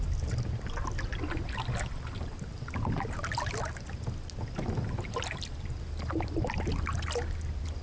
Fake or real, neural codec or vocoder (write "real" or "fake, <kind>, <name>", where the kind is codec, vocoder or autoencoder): real